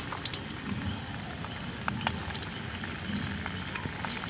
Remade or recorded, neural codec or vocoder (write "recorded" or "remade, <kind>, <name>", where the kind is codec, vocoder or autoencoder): recorded